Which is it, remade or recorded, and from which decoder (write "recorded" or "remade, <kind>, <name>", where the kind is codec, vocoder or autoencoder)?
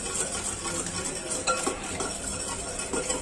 recorded